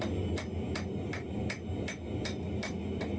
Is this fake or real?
real